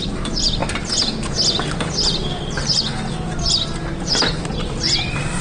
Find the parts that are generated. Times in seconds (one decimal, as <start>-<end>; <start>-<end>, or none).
none